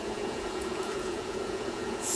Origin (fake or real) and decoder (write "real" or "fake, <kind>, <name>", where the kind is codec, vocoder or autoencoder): fake, vocoder, Vocos